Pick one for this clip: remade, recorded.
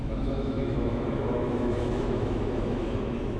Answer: remade